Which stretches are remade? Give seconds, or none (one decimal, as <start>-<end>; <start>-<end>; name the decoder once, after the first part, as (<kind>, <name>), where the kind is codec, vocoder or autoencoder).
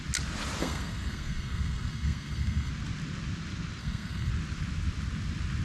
0.6-2.7 (codec, SNAC); 3.8-4.3